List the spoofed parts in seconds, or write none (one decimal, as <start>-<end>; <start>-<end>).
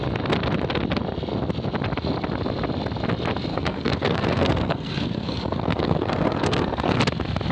3.5-7.0